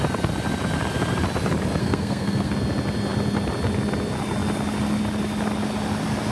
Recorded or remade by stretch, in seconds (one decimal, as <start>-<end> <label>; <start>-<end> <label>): 0.0-1.8 recorded; 1.8-2.5 remade; 2.5-6.3 recorded